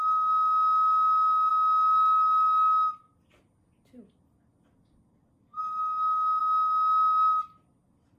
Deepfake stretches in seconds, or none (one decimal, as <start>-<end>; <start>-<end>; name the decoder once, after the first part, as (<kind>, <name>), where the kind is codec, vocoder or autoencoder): none